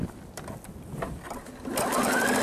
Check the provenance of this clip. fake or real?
real